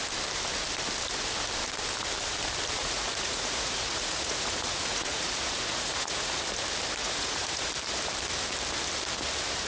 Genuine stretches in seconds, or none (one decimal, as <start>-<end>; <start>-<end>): 0.0-2.8; 6.4-7.0; 7.7-9.7